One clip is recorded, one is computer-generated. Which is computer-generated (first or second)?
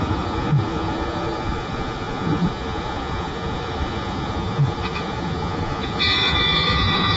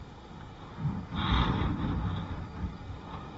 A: first